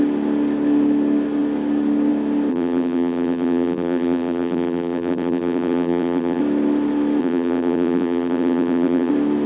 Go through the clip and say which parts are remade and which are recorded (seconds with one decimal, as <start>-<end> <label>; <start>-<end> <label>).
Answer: 0.0-2.5 recorded; 2.5-6.4 remade; 6.4-7.2 recorded; 7.2-9.1 remade; 9.1-9.5 recorded